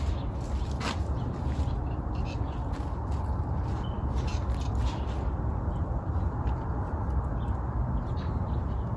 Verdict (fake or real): real